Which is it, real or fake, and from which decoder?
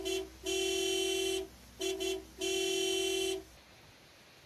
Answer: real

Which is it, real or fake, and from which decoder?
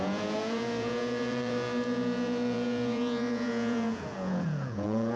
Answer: fake, vocoder, Vocos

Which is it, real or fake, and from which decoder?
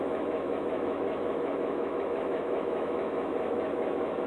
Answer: fake, autoencoder, DAC-VAE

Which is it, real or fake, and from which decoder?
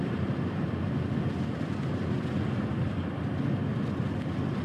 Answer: real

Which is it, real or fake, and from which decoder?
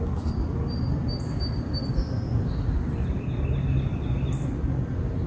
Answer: real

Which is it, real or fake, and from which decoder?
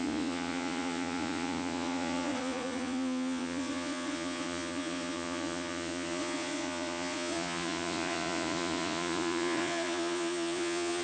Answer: fake, vocoder, Vocos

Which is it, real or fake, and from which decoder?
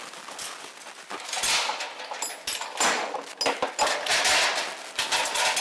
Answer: real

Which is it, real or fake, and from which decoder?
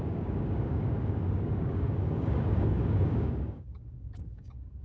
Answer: fake, codec, DAC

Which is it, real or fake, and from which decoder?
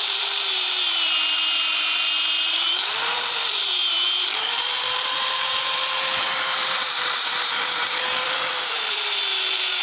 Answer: fake, vocoder, BigVGAN v2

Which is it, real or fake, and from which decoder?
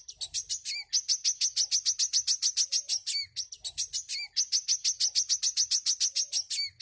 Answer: real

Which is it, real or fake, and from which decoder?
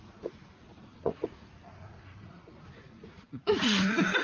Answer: fake, vocoder, Vocos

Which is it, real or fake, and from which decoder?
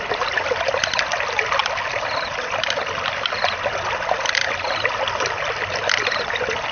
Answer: real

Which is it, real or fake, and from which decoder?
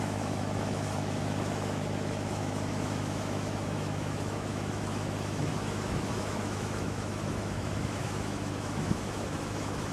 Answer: fake, autoencoder, DAC-VAE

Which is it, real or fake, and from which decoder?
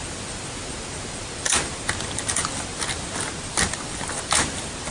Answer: real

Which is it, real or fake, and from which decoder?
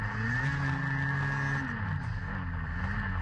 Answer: real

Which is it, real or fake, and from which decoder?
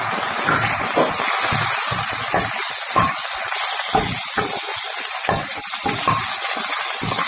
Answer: real